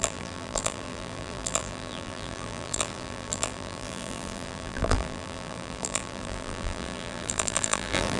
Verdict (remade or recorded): remade